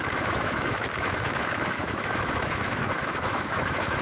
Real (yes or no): no